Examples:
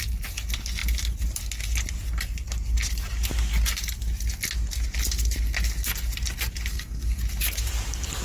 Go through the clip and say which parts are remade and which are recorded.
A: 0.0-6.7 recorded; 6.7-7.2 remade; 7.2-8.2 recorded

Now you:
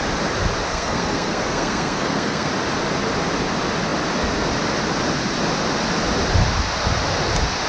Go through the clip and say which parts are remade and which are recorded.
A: 0.0-0.7 recorded; 0.7-2.5 remade; 2.5-7.7 recorded